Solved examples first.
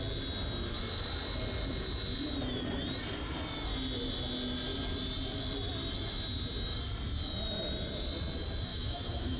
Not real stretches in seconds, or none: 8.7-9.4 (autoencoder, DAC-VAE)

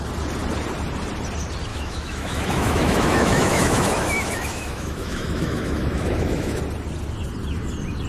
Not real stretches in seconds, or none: 1.7-6.6 (autoencoder, DAC-VAE)

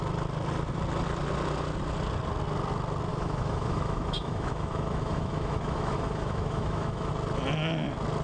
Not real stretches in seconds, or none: 3.1-7.1 (autoencoder, DAC-VAE)

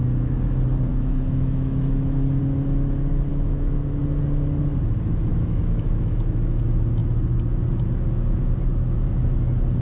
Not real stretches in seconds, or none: 0.9-2.4 (autoencoder, DAC-VAE); 3.3-4.0; 5.3-6.6

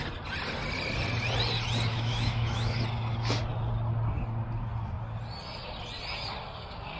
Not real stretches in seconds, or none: 1.9-2.8 (autoencoder, DAC-VAE)

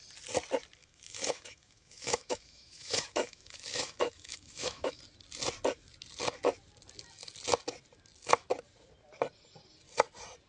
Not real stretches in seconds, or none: 0.8-5.0 (autoencoder, DAC-VAE)

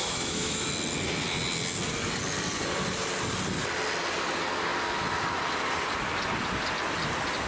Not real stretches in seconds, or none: 0.0-0.7 (autoencoder, DAC-VAE)